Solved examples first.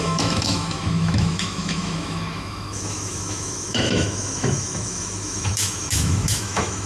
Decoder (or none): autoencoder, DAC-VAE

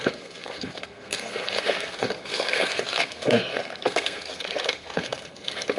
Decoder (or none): codec, SNAC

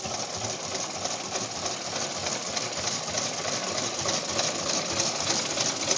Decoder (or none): none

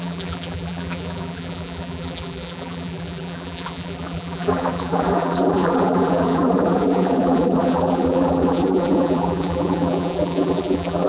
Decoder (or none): vocoder, BigVGAN v2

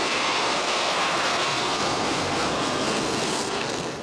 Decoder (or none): codec, SNAC